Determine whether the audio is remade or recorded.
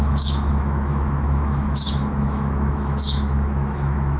remade